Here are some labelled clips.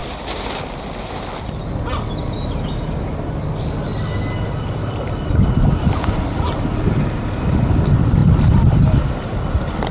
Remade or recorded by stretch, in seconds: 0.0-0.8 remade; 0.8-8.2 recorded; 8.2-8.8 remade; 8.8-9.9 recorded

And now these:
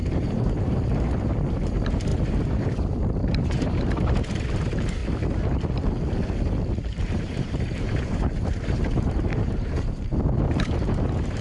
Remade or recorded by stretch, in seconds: 0.0-5.0 remade; 5.0-6.8 recorded; 6.8-11.4 remade

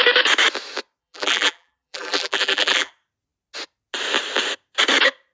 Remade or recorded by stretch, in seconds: 0.0-1.0 recorded; 1.0-2.9 remade; 2.9-5.3 recorded